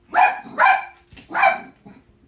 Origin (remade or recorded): recorded